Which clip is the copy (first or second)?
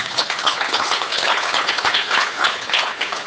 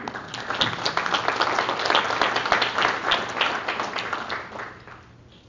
first